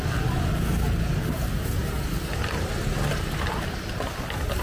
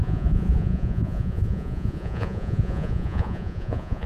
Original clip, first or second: first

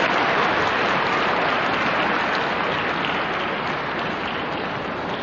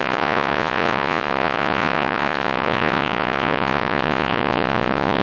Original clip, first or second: first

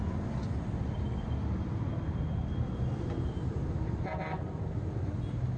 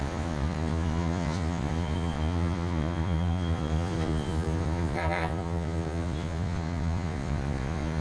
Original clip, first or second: first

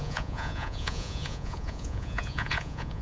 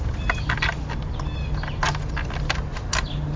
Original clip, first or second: second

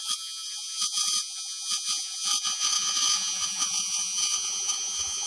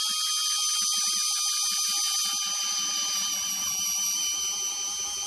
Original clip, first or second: second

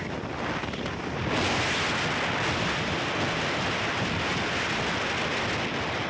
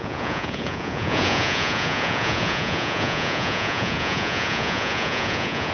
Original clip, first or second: first